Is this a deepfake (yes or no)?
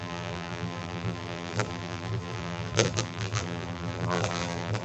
yes